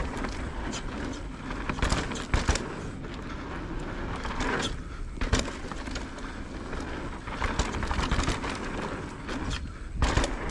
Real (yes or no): yes